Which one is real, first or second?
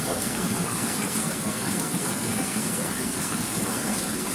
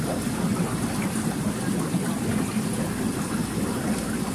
second